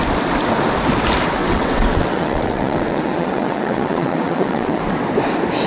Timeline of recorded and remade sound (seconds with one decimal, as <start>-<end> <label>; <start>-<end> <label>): 0.0-1.4 recorded; 1.4-4.8 remade; 4.8-5.7 recorded

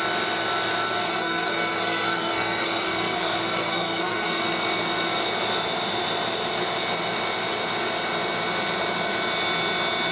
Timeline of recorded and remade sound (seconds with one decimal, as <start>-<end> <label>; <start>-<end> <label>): 0.0-1.1 recorded; 1.1-4.4 remade; 4.4-10.1 recorded

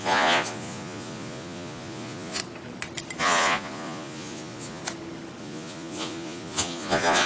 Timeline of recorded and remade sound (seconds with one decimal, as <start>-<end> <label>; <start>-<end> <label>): 0.0-2.4 remade; 2.4-3.2 recorded; 3.2-4.8 remade; 4.8-5.4 recorded; 5.4-7.3 remade

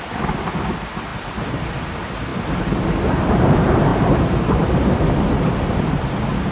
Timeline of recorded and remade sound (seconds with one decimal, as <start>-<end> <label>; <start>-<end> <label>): 0.0-1.1 recorded; 1.1-1.7 remade; 1.7-3.9 recorded; 3.9-4.7 remade; 4.7-6.5 recorded

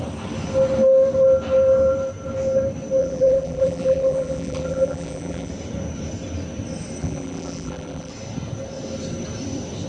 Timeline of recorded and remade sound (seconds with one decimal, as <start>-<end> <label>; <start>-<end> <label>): 0.0-3.0 recorded; 3.0-5.5 remade; 5.5-7.0 recorded; 7.0-8.1 remade; 8.1-9.9 recorded

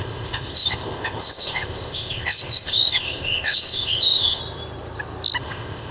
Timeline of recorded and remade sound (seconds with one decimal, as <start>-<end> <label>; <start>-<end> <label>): 0.0-4.4 remade; 4.4-5.4 recorded; 5.4-5.9 remade